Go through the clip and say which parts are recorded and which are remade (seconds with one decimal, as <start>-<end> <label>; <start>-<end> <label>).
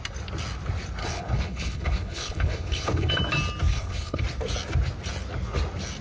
0.0-1.0 recorded; 1.0-3.1 remade; 3.1-3.7 recorded; 3.7-4.2 remade; 4.2-6.0 recorded